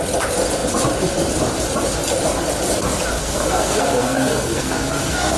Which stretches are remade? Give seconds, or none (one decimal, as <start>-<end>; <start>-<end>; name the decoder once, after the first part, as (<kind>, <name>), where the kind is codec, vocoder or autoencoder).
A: 3.2-5.4 (codec, SNAC)

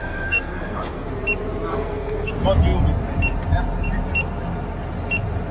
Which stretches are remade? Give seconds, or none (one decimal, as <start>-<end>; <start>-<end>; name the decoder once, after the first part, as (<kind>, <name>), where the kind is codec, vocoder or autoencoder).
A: 0.0-1.1 (codec, SNAC); 1.7-2.3

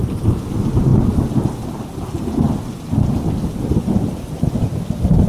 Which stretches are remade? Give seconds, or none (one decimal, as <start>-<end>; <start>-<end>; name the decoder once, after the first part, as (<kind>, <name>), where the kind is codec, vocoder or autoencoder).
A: none